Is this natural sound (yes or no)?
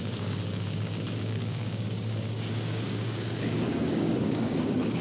no